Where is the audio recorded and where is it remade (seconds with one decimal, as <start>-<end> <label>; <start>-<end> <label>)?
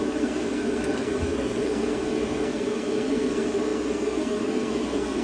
0.0-5.2 remade